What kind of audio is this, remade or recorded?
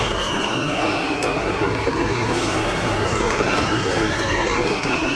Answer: remade